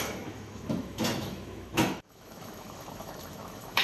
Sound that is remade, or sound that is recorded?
remade